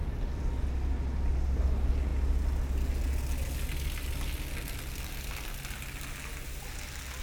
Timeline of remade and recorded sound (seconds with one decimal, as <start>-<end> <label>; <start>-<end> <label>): 0.0-7.2 recorded